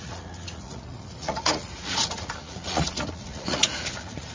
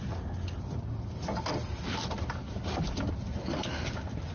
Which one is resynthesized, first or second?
first